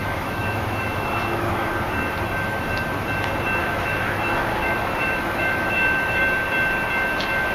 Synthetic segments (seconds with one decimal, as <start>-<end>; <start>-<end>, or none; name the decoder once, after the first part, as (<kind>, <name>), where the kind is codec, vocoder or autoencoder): 0.0-1.7 (autoencoder, DAC-VAE); 3.6-6.2